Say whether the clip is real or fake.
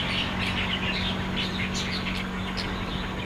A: real